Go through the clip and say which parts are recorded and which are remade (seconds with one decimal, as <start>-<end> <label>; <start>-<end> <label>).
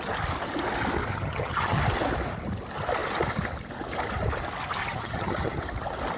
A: 0.0-1.1 recorded; 1.1-1.8 remade; 1.8-4.8 recorded; 4.8-5.6 remade; 5.6-6.2 recorded